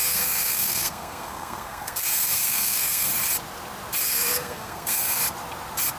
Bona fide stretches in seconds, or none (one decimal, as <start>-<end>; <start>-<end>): 3.1-4.0; 5.2-6.0